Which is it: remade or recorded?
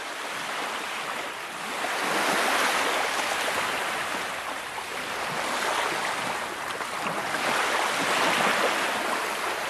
recorded